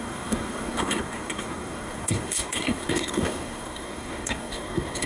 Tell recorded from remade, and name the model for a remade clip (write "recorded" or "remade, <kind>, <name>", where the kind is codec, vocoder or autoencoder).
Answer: remade, codec, SNAC